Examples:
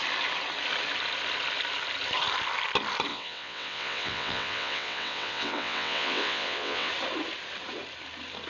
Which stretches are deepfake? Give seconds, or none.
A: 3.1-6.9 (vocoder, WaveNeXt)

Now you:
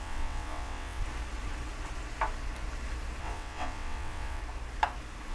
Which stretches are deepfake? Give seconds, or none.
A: 0.0-1.0 (vocoder, WaveNeXt); 3.2-4.4

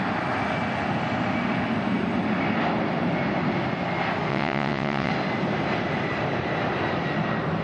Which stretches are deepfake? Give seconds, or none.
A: 4.3-5.1 (vocoder, WaveNeXt)

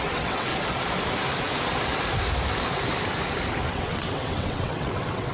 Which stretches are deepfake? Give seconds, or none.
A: 0.0-0.5 (vocoder, WaveNeXt); 3.7-5.3

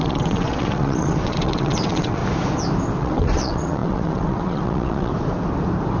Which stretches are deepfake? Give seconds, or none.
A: 0.0-2.2 (vocoder, WaveNeXt); 3.0-5.1

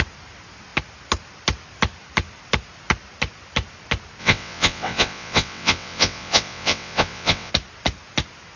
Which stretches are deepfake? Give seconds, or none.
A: 4.2-7.5 (vocoder, WaveNeXt)

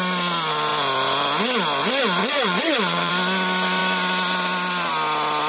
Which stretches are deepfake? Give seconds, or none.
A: 2.2-3.1 (vocoder, WaveNeXt)

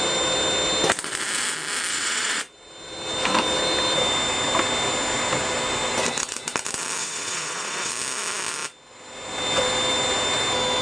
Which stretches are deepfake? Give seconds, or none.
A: 1.9-2.4 (vocoder, WaveNeXt); 7.0-7.9